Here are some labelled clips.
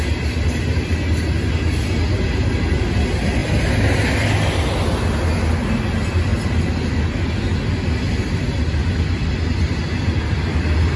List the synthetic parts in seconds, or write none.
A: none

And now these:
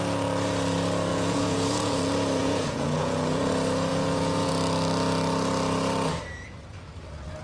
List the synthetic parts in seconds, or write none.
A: 1.1-2.0 (vocoder, Vocos); 2.4-3.5; 3.9-4.5

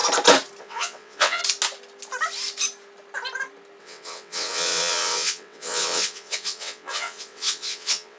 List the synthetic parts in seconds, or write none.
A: 0.6-1.4 (vocoder, WaveNeXt); 3.8-8.2